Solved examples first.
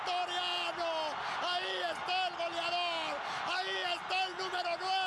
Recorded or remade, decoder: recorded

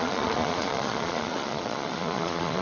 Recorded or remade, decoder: remade, vocoder, Vocos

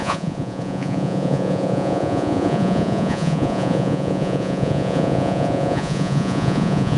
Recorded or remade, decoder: remade, vocoder, Vocos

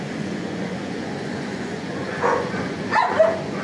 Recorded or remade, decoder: remade, vocoder, Vocos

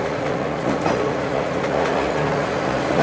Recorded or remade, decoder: remade, vocoder, Vocos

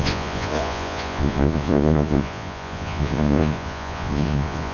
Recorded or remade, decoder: remade, vocoder, Vocos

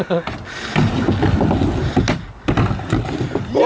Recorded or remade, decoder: recorded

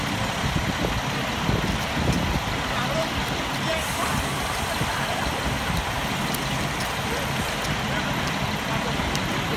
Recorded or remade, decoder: recorded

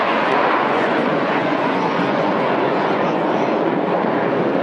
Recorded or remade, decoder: remade, vocoder, Vocos